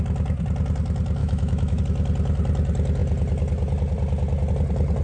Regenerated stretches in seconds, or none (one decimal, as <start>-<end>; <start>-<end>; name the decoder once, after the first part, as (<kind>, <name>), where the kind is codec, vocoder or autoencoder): 1.2-1.8 (autoencoder, DAC-VAE)